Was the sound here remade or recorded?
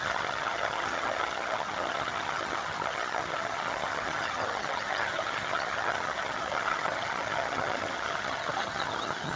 remade